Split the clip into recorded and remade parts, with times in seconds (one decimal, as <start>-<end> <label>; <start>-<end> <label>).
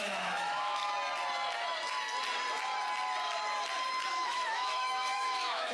0.0-0.8 remade; 0.8-4.1 recorded; 4.1-5.7 remade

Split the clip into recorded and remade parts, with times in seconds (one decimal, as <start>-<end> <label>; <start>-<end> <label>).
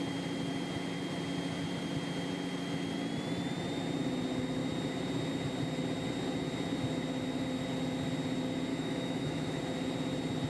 0.0-8.7 recorded; 8.7-9.6 remade; 9.6-10.5 recorded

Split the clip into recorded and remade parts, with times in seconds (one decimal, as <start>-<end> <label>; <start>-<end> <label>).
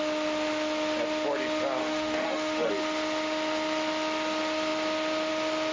0.0-1.8 recorded; 1.8-2.7 remade; 2.7-5.7 recorded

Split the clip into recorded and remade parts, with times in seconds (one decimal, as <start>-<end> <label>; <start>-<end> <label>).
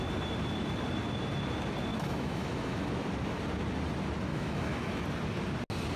0.0-1.9 recorded; 1.9-2.9 remade; 2.9-4.3 recorded; 4.3-5.0 remade; 5.0-6.0 recorded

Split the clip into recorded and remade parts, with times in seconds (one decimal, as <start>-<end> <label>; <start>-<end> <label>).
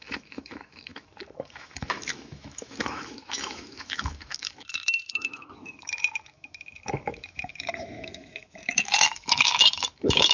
0.0-10.3 remade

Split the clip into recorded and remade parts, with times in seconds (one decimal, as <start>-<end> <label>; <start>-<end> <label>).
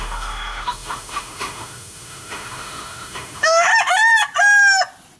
0.0-3.7 remade; 3.7-5.2 recorded